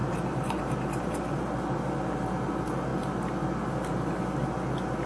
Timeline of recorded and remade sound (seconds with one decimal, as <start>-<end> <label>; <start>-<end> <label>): 0.0-1.4 remade; 1.4-5.1 recorded